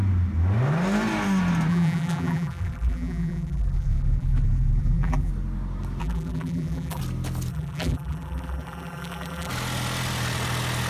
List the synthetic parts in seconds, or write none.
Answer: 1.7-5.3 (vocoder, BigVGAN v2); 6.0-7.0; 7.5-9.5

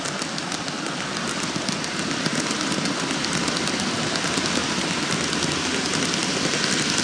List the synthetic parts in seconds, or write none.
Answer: 4.6-5.5 (vocoder, BigVGAN v2)

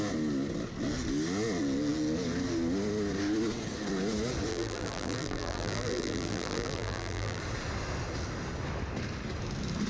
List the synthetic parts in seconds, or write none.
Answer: 4.5-7.4 (vocoder, BigVGAN v2)

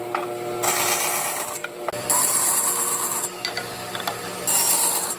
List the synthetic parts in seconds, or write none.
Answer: 1.6-2.6 (vocoder, BigVGAN v2)